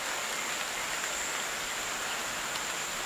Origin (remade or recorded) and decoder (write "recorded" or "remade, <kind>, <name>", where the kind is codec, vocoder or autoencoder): recorded